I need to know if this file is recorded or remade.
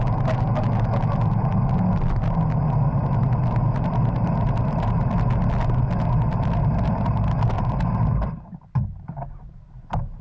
recorded